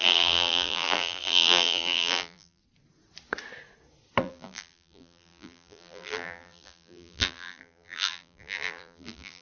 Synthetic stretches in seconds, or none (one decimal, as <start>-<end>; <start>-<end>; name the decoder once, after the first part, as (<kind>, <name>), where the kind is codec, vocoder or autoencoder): 0.0-2.6 (vocoder, BigVGAN v2); 4.2-9.4